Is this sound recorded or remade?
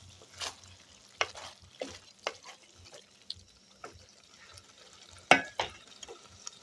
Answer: recorded